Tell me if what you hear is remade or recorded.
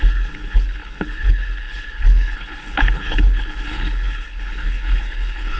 remade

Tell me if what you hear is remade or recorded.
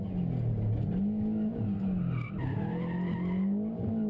recorded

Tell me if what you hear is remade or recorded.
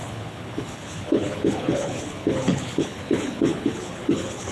remade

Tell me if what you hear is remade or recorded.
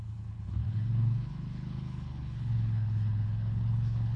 remade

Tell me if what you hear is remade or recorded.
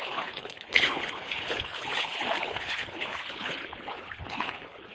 remade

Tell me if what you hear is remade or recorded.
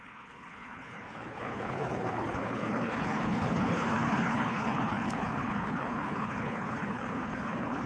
remade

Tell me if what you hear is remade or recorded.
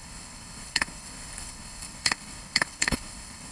remade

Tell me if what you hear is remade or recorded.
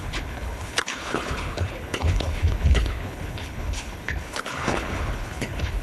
remade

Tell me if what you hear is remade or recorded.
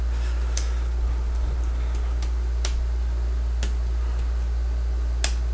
recorded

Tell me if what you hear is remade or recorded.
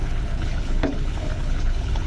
remade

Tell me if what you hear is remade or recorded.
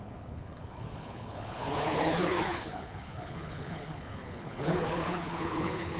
remade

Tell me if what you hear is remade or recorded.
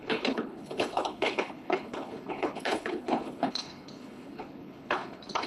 remade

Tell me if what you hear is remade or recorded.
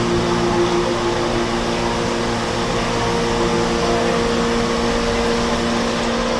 recorded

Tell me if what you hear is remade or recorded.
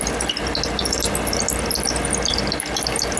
recorded